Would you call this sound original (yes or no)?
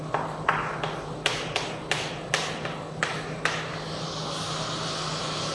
yes